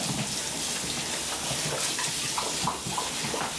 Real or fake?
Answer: real